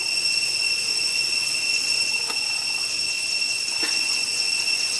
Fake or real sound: fake